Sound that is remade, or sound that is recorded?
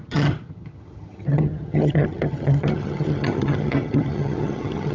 remade